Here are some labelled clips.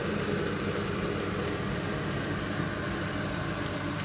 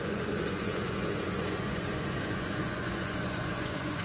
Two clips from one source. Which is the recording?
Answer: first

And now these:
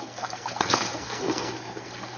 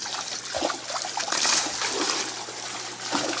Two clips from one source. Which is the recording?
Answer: second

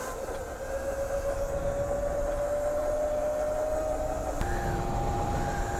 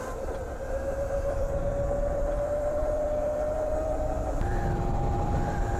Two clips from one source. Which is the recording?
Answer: first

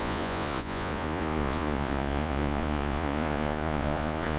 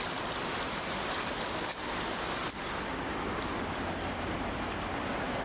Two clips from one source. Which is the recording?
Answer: second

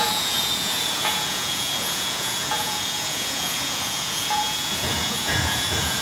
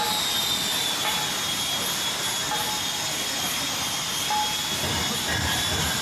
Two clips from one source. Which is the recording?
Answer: second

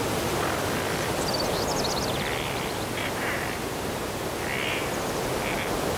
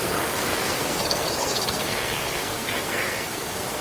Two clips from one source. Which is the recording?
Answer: first